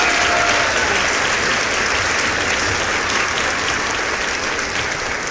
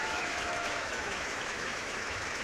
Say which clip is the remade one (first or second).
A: second